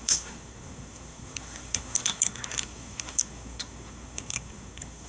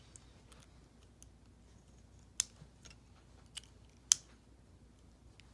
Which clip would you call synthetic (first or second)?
first